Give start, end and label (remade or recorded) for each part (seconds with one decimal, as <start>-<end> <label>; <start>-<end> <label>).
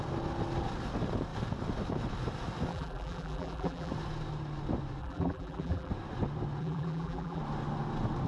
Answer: 0.0-2.7 recorded; 2.7-3.9 remade; 3.9-5.0 recorded; 5.0-5.9 remade; 5.9-6.6 recorded; 6.6-7.4 remade; 7.4-8.3 recorded